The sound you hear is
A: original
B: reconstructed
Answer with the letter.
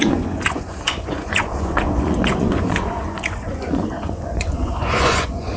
B